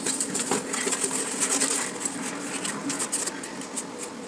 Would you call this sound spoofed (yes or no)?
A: no